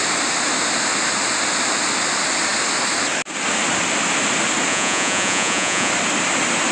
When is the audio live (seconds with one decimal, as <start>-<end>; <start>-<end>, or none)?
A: 0.0-4.7; 5.9-6.7